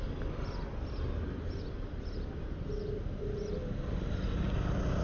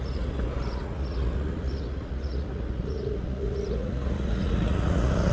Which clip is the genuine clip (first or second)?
first